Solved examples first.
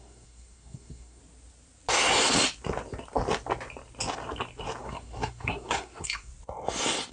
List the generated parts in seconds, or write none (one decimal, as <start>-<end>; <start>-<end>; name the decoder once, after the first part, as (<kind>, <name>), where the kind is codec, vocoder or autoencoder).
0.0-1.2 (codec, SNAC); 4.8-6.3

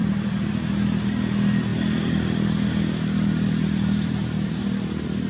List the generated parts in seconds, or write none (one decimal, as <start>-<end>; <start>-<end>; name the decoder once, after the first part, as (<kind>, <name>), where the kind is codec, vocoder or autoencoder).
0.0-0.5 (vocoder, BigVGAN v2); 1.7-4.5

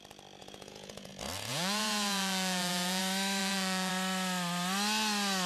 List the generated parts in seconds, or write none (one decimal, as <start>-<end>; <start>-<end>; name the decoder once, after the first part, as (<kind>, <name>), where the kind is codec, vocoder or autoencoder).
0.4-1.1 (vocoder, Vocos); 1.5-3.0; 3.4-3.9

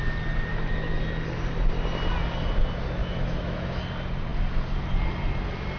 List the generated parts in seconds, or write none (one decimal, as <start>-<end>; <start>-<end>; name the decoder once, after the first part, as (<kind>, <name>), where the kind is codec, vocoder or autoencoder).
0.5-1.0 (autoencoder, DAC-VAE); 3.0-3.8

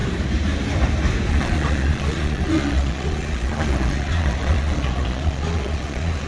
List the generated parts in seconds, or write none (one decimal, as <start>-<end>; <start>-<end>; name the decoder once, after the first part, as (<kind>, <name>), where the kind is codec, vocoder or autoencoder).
1.3-6.3 (vocoder, Vocos)